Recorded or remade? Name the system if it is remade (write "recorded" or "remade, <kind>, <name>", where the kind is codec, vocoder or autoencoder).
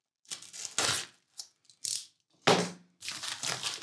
recorded